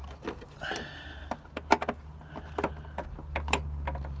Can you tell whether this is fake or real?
real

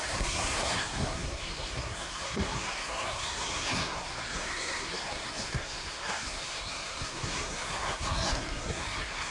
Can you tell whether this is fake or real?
fake